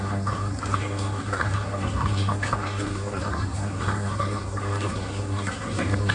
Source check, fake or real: fake